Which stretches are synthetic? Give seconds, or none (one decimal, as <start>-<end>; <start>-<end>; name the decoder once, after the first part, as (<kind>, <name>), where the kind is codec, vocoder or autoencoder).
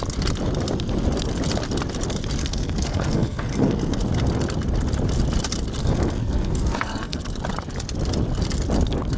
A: 2.4-4.0 (codec, SNAC); 5.8-7.2